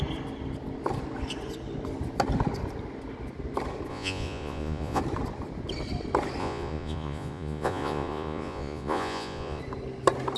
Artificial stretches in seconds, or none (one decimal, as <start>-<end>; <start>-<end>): 3.9-5.0; 6.4-9.6